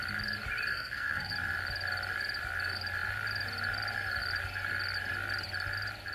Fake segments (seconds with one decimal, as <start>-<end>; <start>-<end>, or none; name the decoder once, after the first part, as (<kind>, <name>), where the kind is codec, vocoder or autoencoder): 0.7-1.3 (codec, SNAC)